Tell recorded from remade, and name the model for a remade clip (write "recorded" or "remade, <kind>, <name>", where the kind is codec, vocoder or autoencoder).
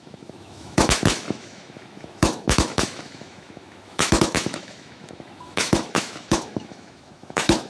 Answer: remade, autoencoder, DAC-VAE